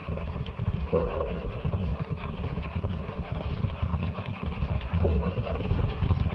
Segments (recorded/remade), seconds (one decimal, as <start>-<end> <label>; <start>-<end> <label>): 0.0-6.3 remade